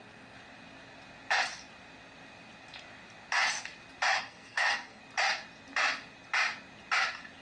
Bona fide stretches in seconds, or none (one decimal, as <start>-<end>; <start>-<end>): 0.0-4.2; 5.0-7.4